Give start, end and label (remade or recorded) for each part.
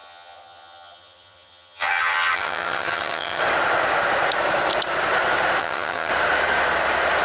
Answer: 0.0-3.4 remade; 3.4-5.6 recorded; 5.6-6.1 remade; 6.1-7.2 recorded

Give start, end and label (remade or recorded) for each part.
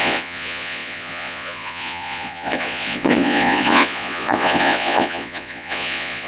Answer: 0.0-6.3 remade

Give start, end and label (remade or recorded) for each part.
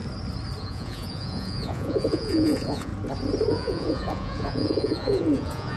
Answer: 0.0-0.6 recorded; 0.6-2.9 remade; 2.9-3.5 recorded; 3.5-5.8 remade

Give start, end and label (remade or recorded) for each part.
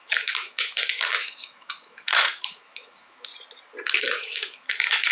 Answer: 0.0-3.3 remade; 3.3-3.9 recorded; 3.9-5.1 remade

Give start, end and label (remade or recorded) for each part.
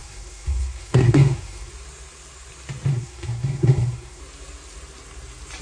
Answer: 0.0-1.7 remade; 1.7-2.9 recorded; 2.9-4.2 remade; 4.2-5.6 recorded